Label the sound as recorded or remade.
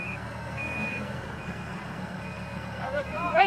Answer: remade